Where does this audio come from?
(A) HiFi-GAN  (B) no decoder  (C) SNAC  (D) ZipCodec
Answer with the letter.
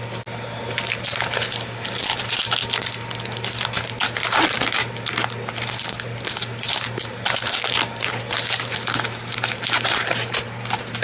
B